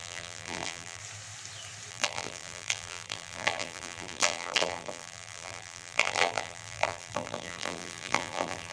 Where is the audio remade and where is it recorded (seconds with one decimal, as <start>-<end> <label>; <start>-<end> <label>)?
0.0-1.0 remade; 1.0-1.9 recorded; 1.9-8.7 remade